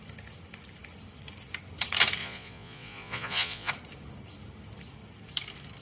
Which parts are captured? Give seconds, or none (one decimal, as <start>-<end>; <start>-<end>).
0.0-2.2; 3.7-5.8